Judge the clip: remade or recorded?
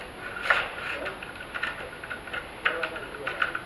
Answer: recorded